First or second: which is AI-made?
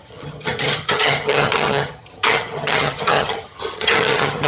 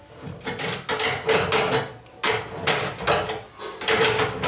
first